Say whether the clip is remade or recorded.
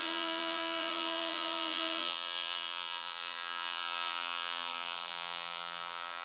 remade